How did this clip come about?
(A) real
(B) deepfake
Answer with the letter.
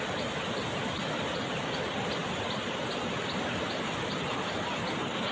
A